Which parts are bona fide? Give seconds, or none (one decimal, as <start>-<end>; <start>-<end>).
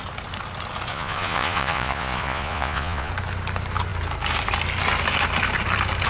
0.0-0.9; 3.1-6.1